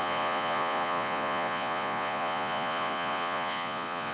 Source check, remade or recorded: remade